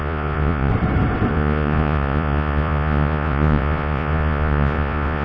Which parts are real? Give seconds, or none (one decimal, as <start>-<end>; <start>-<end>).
0.7-1.3